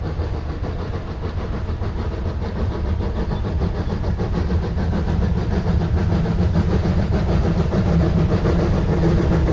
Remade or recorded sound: recorded